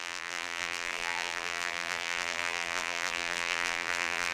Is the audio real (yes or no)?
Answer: no